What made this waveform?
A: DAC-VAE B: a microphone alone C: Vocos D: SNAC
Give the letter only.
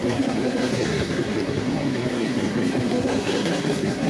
D